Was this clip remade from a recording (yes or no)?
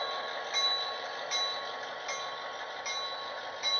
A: no